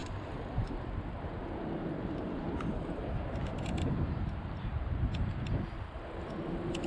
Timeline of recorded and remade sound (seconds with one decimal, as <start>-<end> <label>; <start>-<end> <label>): 0.0-1.4 remade; 1.4-1.8 recorded; 1.8-5.9 remade; 5.9-6.9 recorded